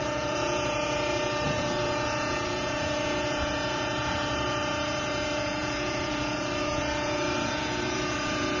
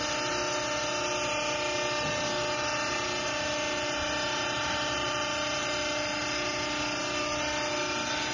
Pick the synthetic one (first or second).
first